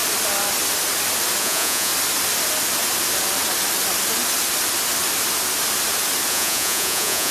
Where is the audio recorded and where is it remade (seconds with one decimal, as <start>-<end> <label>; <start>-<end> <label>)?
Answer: 0.0-1.4 recorded; 1.4-1.9 remade; 1.9-6.3 recorded; 6.3-7.3 remade